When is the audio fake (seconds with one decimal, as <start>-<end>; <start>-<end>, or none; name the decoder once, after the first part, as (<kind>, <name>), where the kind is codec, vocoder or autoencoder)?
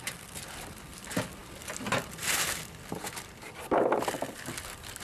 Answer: none